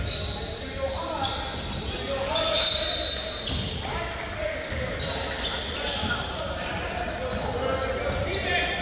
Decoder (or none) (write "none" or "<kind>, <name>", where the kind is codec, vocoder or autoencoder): none